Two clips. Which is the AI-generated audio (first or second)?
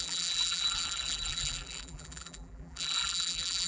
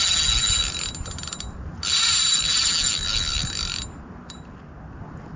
first